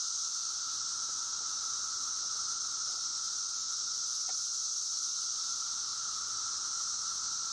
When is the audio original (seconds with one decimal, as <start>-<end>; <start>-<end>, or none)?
0.0-0.9; 2.4-3.1; 5.4-7.5